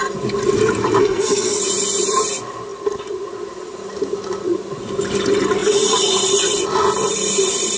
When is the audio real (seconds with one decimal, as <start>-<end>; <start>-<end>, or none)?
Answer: 0.0-1.0; 1.6-7.8